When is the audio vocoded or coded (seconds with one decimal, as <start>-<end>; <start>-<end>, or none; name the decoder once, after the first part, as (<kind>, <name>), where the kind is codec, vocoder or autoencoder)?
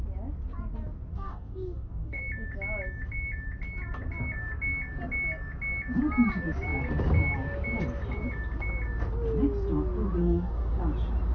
1.1-2.2 (codec, DAC); 10.2-10.8